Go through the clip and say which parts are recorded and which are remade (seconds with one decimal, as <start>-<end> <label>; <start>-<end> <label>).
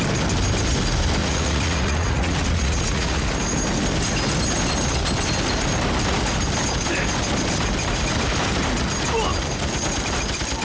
0.0-1.2 recorded; 1.2-3.2 remade; 3.2-10.6 recorded